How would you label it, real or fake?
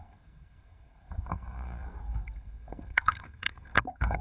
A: fake